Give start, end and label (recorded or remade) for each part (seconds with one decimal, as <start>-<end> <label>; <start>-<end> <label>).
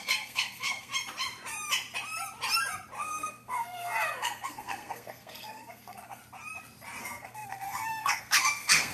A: 0.0-0.9 remade; 0.9-3.0 recorded; 3.0-6.2 remade; 6.2-7.0 recorded; 7.0-8.9 remade